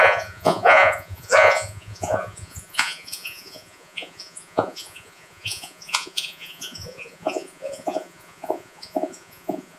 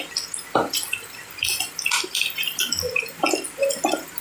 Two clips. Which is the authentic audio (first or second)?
second